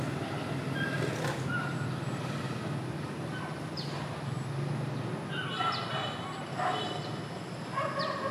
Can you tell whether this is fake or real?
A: real